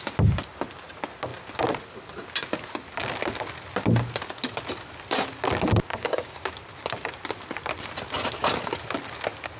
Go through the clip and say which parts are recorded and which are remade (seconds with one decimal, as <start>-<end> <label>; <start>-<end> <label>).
0.0-5.9 recorded; 5.9-6.5 remade; 6.5-9.6 recorded